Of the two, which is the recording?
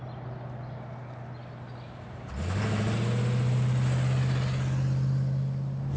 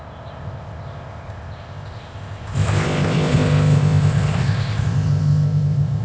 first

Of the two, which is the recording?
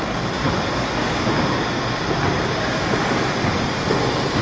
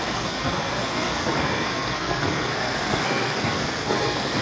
first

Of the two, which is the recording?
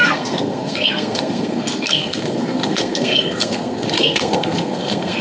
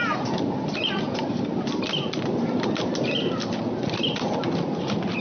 second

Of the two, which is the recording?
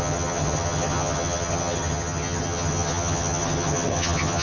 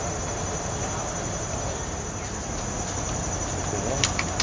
second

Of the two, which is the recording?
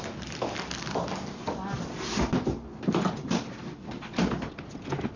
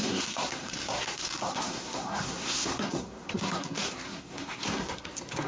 first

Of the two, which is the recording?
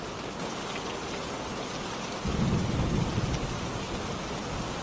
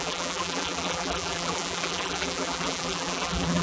first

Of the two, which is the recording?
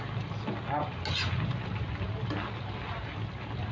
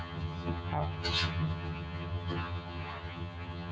first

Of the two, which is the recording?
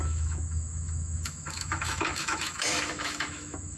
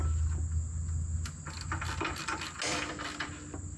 second